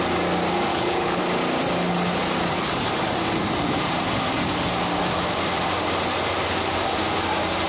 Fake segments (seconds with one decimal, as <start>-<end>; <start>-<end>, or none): 0.7-1.2